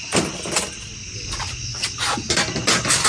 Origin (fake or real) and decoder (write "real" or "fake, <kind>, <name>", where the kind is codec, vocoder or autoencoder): real